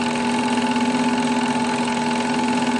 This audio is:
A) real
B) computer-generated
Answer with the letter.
A